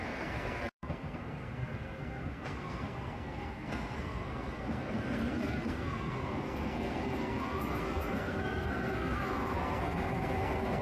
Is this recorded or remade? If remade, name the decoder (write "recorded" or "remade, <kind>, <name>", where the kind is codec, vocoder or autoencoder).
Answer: remade, codec, SNAC